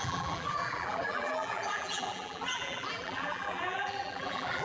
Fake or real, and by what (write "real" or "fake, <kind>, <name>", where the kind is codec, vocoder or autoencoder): fake, vocoder, BigVGAN v2